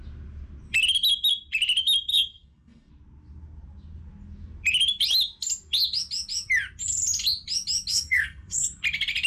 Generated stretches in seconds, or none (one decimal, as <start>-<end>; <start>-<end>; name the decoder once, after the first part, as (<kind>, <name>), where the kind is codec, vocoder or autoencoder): 2.1-2.9 (codec, SNAC); 7.9-8.8